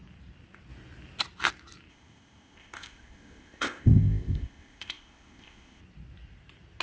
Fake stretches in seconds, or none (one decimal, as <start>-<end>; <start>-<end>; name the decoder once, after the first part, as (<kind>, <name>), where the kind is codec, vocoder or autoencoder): 1.9-5.8 (codec, ZipCodec)